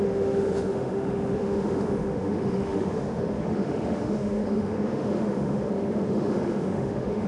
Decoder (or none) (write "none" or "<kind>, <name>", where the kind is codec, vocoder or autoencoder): autoencoder, DAC-VAE